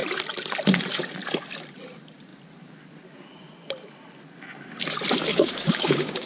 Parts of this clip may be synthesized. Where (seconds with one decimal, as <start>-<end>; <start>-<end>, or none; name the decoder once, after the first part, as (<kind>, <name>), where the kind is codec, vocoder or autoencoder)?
5.3-6.3 (codec, DAC)